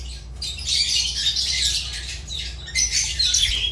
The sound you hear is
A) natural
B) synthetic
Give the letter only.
B